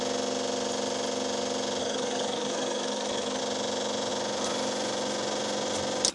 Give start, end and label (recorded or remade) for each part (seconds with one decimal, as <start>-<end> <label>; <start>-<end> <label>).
0.0-1.8 recorded; 1.8-3.4 remade; 3.4-6.1 recorded